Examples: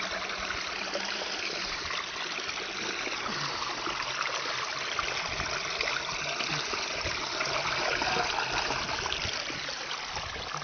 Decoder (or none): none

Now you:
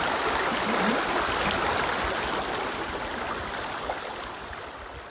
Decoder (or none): none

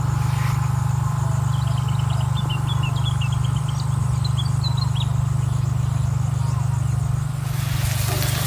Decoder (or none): none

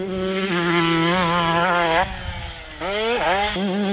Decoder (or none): none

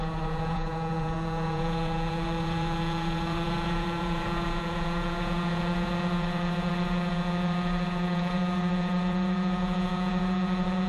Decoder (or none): vocoder, Vocos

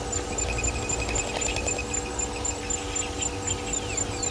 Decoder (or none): none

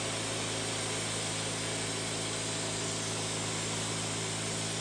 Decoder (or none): none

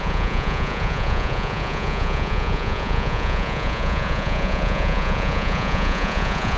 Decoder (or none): vocoder, Vocos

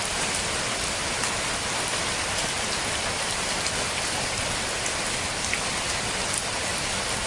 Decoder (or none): none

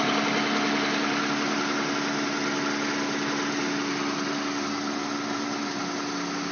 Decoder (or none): none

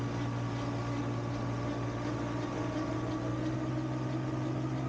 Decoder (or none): none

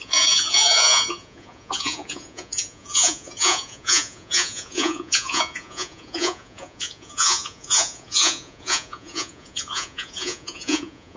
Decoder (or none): vocoder, Vocos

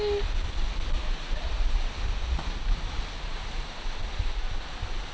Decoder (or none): none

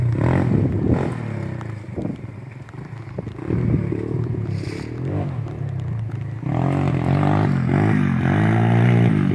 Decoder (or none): none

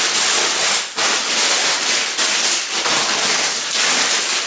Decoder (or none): none